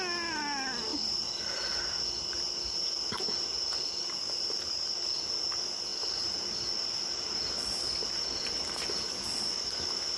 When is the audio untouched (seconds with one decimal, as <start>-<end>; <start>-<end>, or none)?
0.0-10.2